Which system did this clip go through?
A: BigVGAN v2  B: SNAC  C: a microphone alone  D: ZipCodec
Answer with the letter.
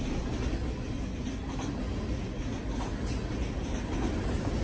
C